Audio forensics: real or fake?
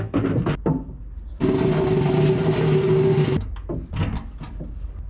real